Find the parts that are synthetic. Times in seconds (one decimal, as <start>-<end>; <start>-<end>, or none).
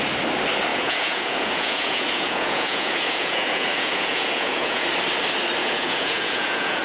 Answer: 0.7-4.8; 5.6-6.8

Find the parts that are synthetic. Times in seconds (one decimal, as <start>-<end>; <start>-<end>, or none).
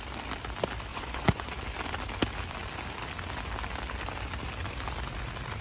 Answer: 0.9-1.5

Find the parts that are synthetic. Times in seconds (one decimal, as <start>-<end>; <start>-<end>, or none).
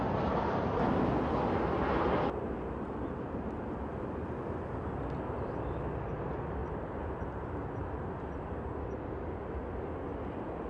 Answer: none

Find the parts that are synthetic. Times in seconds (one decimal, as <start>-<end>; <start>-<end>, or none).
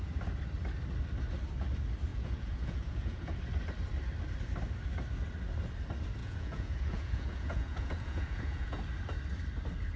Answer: 2.1-3.4; 6.2-8.8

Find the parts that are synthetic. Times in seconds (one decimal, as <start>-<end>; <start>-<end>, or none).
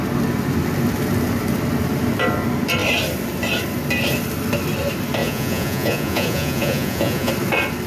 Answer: 5.2-7.3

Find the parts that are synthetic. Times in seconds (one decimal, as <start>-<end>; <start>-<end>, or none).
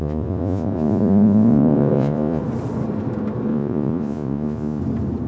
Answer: 0.0-2.4; 3.5-4.8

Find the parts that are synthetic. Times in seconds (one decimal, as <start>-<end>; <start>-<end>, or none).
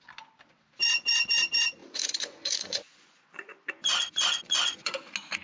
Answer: 1.8-5.0